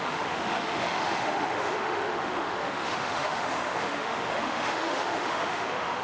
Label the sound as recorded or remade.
remade